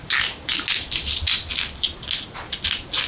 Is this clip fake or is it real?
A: real